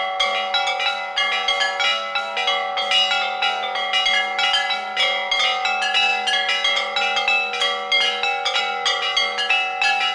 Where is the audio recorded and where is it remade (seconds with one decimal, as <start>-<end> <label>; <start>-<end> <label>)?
0.0-10.1 recorded